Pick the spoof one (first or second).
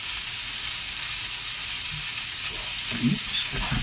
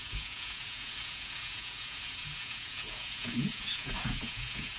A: second